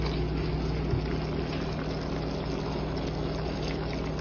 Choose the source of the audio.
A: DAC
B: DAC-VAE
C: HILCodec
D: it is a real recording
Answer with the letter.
D